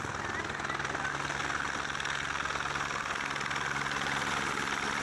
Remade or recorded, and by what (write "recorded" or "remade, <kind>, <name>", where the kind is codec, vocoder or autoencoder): recorded